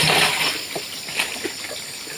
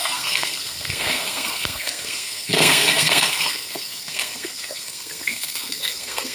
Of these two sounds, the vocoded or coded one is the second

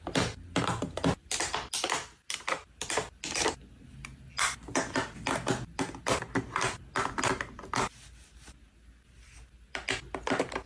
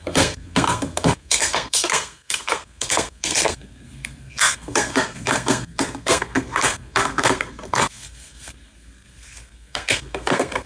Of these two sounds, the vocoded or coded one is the second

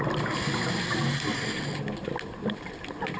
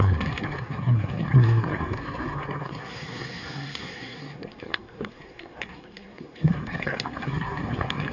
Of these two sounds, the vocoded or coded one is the second